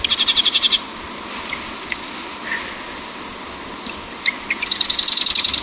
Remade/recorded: recorded